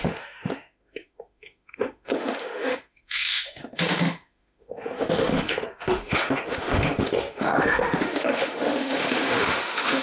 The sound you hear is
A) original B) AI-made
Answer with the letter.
B